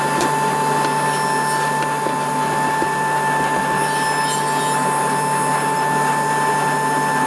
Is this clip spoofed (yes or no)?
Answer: no